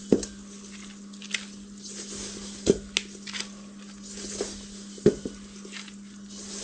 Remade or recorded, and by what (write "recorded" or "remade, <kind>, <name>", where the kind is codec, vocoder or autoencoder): recorded